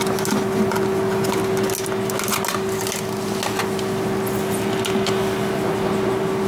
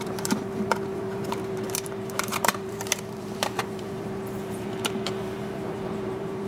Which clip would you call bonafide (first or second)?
first